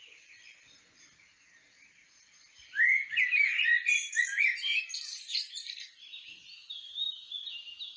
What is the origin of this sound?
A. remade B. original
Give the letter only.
B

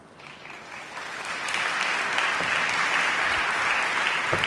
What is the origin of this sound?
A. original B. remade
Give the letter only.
A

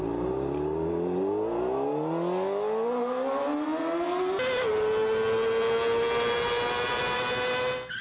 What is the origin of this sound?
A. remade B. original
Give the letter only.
B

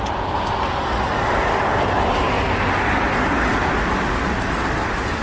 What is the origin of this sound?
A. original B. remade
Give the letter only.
A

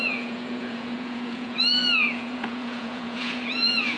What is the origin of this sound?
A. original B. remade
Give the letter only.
B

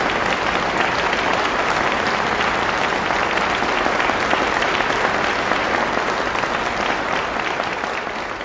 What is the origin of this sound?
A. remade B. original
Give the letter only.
B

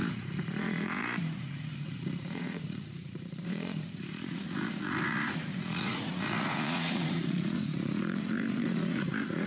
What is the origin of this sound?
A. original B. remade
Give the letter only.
B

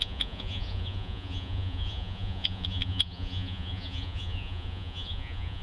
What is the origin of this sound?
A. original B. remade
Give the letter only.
B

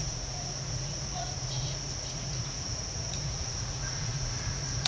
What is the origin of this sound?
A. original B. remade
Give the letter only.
B